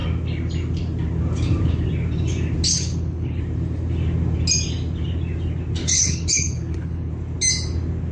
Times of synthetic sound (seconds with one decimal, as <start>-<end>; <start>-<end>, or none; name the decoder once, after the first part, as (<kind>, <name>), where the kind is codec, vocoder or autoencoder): 2.7-3.4 (codec, HILCodec); 5.8-7.1